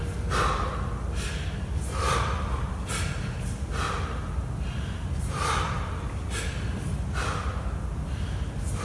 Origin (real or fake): real